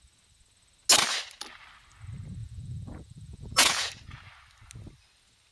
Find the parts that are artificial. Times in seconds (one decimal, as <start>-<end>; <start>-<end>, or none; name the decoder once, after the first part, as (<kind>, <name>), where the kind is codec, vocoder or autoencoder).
2.4-3.9 (vocoder, Vocos)